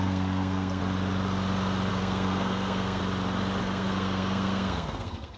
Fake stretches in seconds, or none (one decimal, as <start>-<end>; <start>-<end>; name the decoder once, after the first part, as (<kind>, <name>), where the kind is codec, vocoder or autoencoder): 0.0-0.8 (codec, SNAC); 1.9-3.0; 3.6-5.4